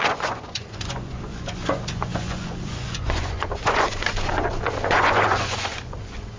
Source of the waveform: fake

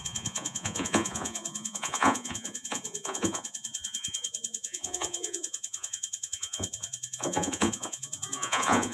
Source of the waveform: fake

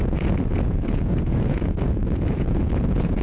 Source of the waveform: fake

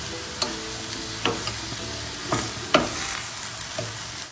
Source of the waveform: real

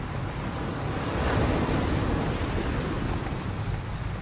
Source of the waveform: real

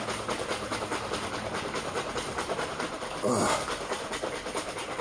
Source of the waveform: real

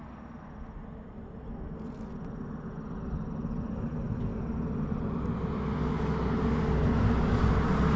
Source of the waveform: real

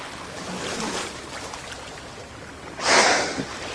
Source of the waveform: real